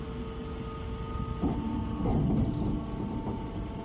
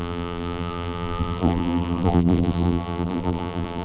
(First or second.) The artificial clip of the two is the second